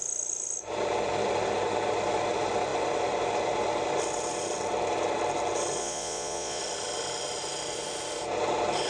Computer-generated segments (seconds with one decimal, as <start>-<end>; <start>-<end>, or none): 5.8-6.6